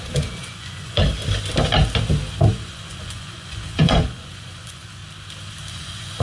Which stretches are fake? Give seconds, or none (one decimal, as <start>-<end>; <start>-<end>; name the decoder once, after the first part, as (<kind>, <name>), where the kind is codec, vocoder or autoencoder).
0.0-1.0 (vocoder, Vocos); 2.5-5.0; 5.7-6.2